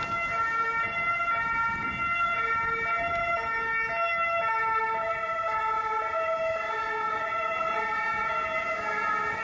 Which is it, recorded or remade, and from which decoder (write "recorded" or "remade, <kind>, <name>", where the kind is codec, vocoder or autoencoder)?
recorded